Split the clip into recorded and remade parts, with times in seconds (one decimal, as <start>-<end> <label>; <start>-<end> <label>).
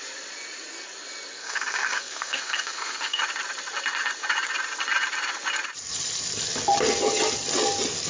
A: 0.0-1.4 recorded; 1.4-3.2 remade; 3.2-8.1 recorded